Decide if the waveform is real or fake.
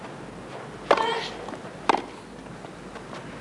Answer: real